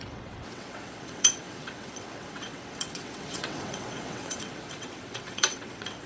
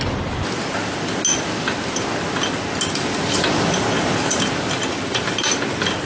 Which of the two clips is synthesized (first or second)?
first